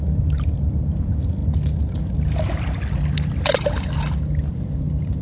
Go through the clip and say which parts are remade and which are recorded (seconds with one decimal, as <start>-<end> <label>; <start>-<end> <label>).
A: 0.0-1.4 remade; 1.4-4.5 recorded; 4.5-5.2 remade